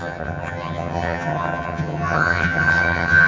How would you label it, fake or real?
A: fake